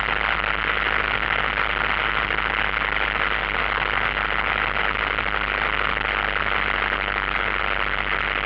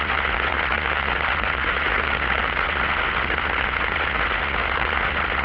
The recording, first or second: first